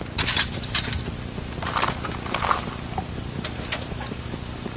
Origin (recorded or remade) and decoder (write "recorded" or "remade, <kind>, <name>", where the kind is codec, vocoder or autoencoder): remade, vocoder, BigVGAN v2